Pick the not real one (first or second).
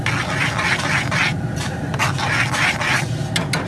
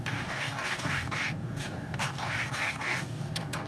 second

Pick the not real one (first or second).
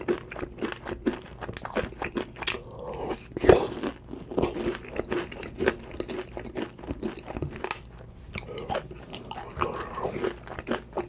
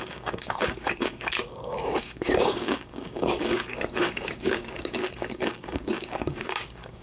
second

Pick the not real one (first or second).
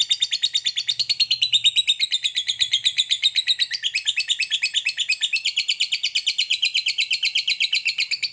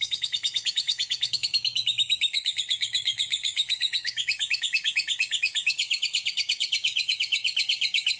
second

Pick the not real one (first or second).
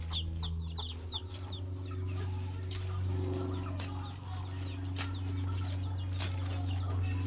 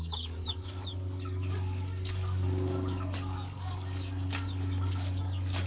second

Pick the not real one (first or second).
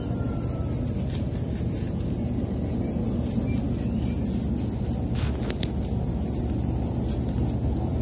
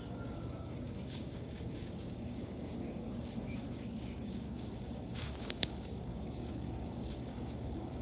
second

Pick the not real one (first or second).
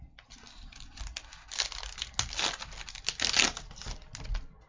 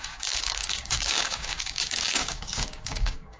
second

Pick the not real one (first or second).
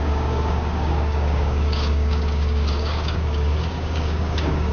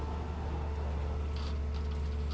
first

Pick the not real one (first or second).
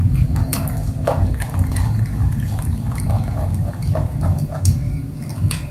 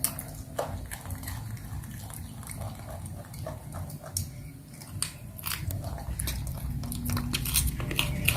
first